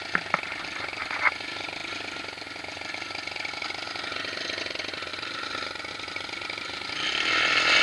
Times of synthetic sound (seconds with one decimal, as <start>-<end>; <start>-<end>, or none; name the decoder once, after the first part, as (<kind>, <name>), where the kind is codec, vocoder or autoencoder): 5.1-5.9 (vocoder, BigVGAN v2)